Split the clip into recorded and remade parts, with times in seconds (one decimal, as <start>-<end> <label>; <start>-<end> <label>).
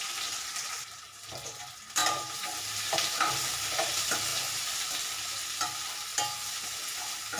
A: 0.0-2.0 recorded; 2.0-3.3 remade; 3.3-7.4 recorded